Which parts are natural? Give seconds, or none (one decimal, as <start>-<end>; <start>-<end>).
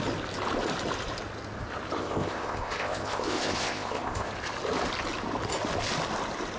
0.0-2.0; 4.3-6.6